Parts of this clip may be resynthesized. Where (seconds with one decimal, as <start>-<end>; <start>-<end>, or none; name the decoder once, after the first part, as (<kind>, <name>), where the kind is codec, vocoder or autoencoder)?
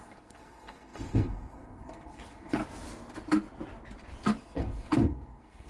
0.0-2.6 (codec, SNAC); 4.4-5.7